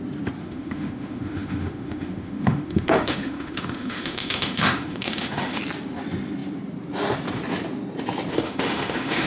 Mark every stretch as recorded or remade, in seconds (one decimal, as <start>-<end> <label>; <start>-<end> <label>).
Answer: 0.0-0.4 recorded; 0.4-5.6 remade; 5.6-8.3 recorded; 8.3-9.3 remade